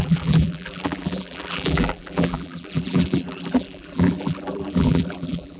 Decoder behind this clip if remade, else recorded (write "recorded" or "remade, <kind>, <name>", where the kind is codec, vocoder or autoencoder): remade, vocoder, BigVGAN v2